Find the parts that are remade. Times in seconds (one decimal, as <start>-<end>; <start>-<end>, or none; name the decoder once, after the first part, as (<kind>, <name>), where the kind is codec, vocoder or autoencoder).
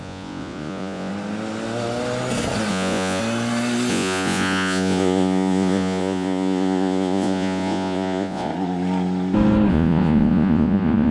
0.0-1.1 (vocoder, Vocos); 2.7-3.2; 3.9-8.5; 9.7-11.1